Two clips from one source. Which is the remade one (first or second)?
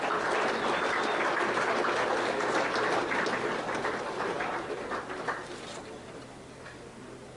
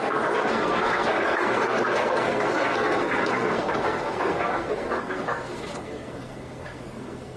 second